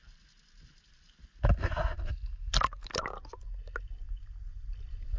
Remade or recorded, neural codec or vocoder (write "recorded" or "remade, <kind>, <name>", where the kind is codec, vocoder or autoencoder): recorded